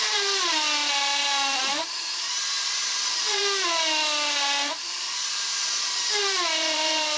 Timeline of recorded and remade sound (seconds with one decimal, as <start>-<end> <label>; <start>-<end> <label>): 0.0-3.4 remade; 3.4-4.7 recorded; 4.7-5.3 remade; 5.3-6.2 recorded; 6.2-7.2 remade